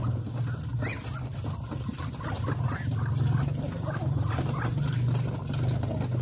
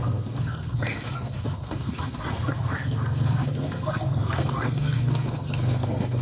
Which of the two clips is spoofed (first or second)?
second